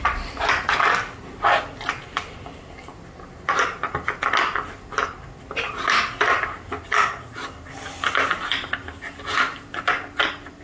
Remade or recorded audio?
recorded